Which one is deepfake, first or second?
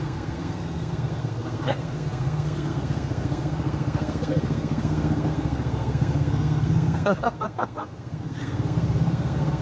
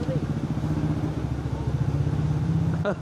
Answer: first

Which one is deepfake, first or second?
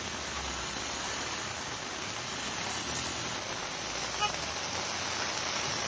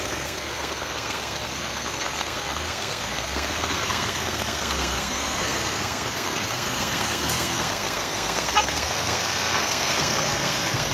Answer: second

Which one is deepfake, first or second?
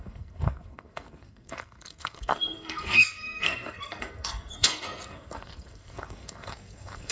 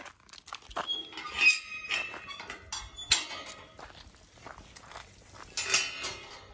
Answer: first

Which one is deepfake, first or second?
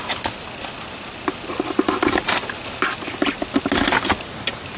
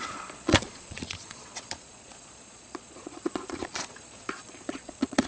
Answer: second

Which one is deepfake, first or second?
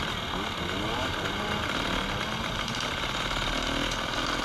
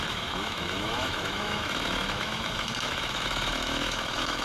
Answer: second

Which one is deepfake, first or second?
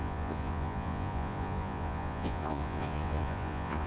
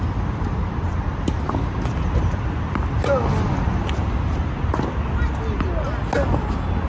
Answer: first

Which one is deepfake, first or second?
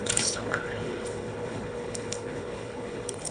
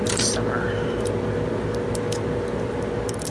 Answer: first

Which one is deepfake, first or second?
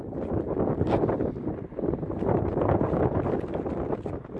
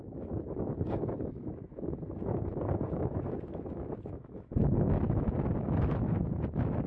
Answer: second